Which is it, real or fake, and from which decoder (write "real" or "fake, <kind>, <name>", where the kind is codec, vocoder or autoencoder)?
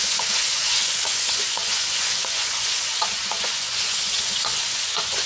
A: fake, vocoder, Vocos